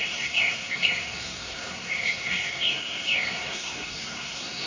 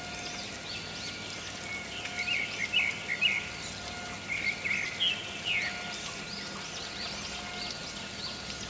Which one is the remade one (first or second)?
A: first